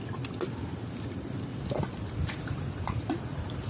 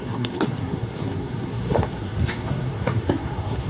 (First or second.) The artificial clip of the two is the second